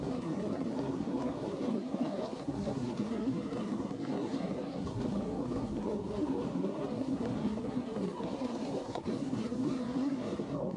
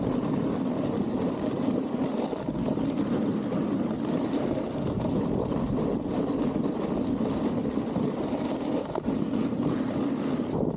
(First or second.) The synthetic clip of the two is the first